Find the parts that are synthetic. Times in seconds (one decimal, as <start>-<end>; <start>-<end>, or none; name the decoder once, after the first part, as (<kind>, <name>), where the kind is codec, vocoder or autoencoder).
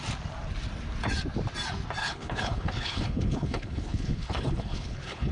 2.0-5.3 (codec, HILCodec)